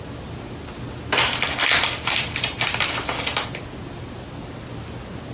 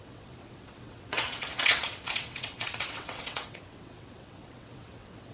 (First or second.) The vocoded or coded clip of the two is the second